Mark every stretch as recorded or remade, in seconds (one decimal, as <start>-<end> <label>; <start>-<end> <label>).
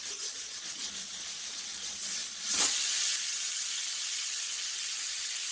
0.0-5.5 remade